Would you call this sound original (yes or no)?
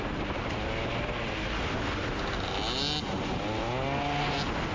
yes